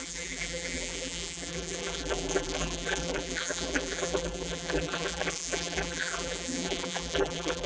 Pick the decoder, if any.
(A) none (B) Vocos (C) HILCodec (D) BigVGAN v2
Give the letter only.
D